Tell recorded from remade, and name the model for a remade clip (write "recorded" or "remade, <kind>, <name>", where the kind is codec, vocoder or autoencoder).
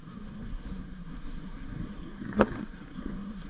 remade, codec, SNAC